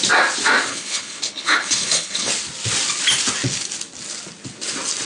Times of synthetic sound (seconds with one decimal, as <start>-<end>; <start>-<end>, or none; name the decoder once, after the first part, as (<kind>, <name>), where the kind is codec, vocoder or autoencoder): 0.7-2.3 (codec, HILCodec)